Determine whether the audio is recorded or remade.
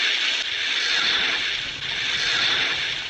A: recorded